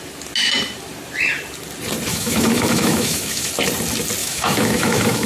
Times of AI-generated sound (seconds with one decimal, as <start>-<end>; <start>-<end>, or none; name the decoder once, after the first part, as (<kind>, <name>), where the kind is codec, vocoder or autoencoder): 2.1-3.5 (autoencoder, DAC-VAE); 4.2-5.3

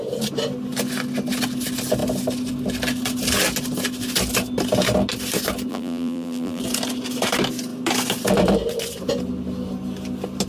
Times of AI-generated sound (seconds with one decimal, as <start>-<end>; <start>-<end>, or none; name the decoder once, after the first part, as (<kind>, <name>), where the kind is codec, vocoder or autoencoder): 5.7-6.6 (vocoder, BigVGAN v2)

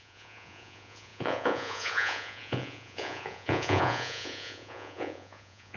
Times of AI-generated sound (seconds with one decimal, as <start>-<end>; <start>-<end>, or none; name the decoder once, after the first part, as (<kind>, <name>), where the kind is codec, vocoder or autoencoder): 0.0-5.8 (vocoder, Vocos)